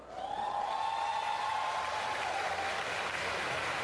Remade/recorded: recorded